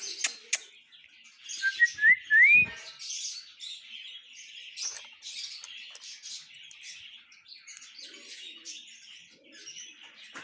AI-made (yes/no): no